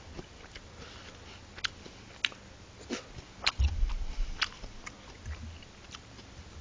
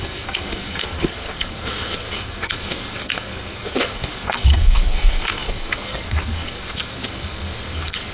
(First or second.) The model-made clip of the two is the second